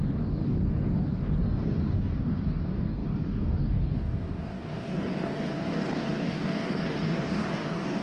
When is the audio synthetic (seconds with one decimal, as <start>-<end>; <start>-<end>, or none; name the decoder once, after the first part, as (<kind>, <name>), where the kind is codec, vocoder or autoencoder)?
0.0-8.0 (codec, DAC)